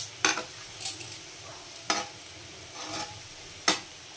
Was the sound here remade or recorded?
recorded